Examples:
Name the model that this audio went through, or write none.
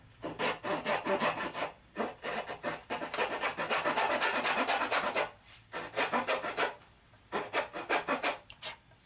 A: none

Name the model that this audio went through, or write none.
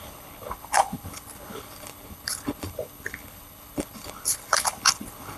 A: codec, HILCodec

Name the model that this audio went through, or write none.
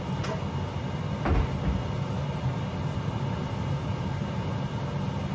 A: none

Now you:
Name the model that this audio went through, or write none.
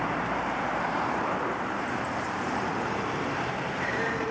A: vocoder, BigVGAN v2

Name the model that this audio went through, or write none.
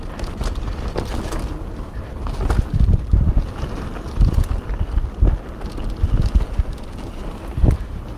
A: none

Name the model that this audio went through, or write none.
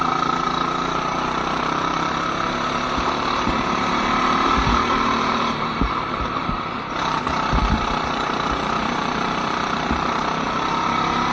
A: vocoder, BigVGAN v2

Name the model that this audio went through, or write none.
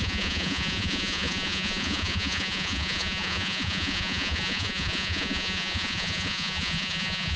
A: vocoder, Vocos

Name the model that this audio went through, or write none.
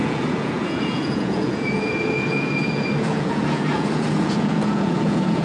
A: vocoder, Vocos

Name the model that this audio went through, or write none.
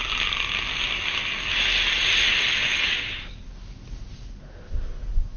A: none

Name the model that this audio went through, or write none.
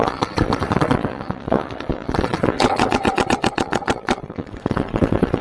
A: vocoder, WaveNeXt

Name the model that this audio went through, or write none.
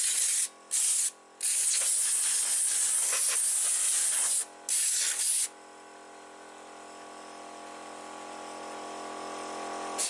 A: none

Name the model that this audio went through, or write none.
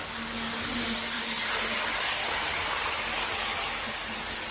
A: none